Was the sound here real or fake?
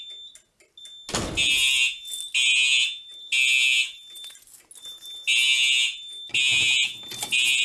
real